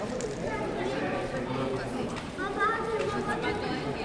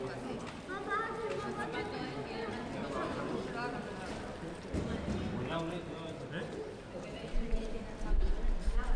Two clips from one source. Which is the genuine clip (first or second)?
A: second